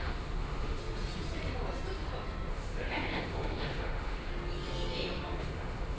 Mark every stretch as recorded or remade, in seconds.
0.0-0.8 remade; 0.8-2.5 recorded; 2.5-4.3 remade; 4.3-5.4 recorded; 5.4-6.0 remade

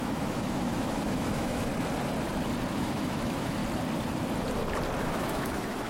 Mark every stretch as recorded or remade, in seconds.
0.0-1.7 remade; 1.7-2.7 recorded; 2.7-3.6 remade; 3.6-5.0 recorded; 5.0-5.9 remade